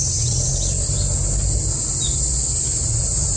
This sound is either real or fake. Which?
fake